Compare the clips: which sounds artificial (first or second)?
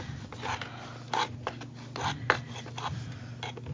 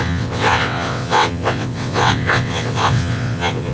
second